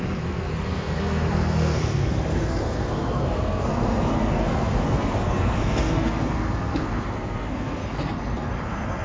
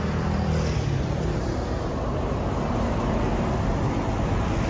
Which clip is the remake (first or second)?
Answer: first